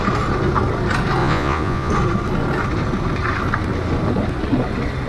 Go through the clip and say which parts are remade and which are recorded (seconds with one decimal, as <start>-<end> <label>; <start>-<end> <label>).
0.0-1.2 recorded; 1.2-1.9 remade; 1.9-5.1 recorded